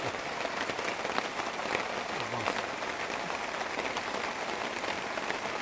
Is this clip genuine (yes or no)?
yes